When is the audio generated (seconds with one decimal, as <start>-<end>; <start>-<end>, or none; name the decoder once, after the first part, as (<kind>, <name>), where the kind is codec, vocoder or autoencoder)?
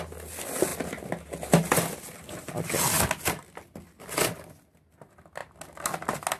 none